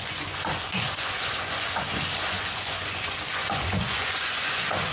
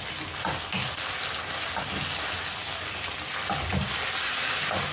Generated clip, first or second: first